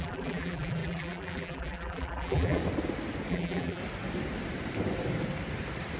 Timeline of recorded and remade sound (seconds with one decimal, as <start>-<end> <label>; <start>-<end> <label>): 0.0-2.6 remade; 2.6-3.3 recorded; 3.3-3.8 remade; 3.8-6.0 recorded